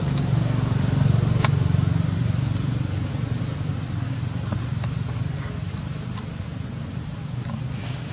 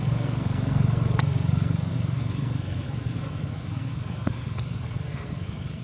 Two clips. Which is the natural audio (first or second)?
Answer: first